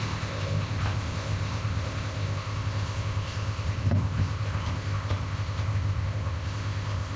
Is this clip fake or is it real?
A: fake